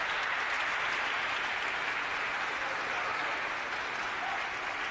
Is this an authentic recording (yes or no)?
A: yes